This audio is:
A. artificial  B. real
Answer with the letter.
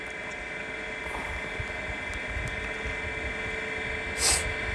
B